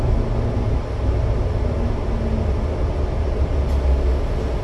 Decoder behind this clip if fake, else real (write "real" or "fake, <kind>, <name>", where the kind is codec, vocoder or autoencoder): real